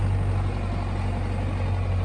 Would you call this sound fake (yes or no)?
no